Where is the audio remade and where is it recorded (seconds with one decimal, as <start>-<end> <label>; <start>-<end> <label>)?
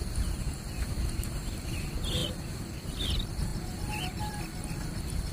0.0-3.5 recorded; 3.5-5.3 remade